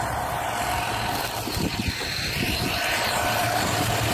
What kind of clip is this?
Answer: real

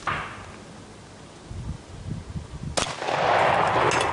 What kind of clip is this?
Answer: real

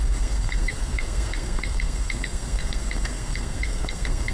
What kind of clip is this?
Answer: fake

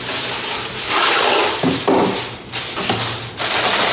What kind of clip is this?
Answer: real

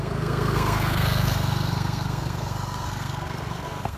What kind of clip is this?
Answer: fake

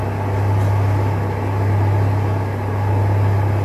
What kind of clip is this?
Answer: real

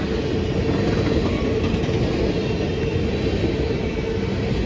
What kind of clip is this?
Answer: real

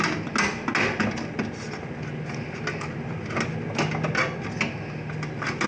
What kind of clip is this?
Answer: real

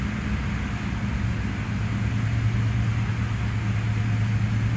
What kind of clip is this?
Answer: real